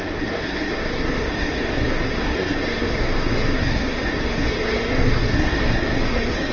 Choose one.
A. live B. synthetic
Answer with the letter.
B